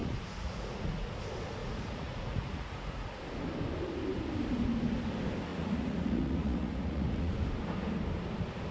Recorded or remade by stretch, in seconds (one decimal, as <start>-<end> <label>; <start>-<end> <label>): 0.0-1.1 remade; 1.1-1.6 recorded; 1.6-3.2 remade; 3.2-5.5 recorded; 5.5-7.3 remade; 7.3-8.7 recorded